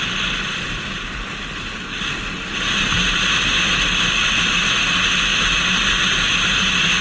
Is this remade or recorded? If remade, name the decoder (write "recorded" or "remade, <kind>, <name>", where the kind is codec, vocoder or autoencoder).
recorded